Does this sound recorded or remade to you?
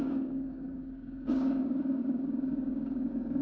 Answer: remade